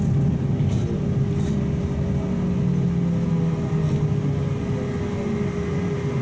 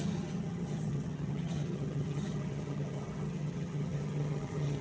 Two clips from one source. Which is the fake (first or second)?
second